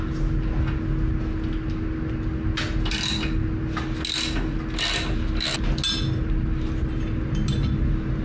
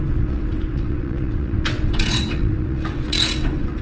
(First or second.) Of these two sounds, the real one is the first